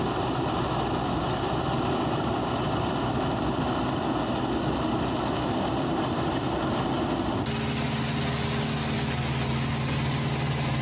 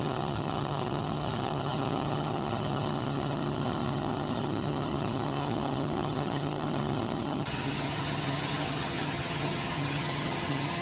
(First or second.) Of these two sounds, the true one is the first